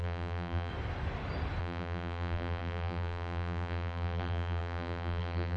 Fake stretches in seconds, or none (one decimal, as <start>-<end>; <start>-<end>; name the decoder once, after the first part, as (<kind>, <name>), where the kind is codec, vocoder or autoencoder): 0.0-0.7 (vocoder, BigVGAN v2); 1.6-5.6